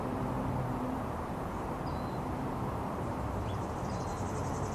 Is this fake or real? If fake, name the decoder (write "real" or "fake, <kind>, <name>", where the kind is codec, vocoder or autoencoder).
fake, vocoder, BigVGAN v2